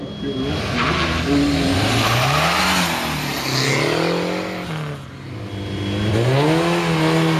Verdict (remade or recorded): recorded